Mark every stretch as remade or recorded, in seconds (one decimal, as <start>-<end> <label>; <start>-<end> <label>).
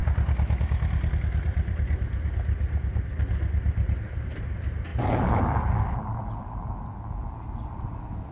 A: 0.0-8.3 recorded